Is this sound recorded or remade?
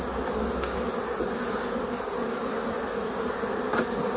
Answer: recorded